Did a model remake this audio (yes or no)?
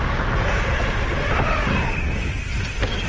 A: no